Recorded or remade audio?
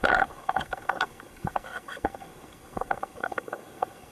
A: remade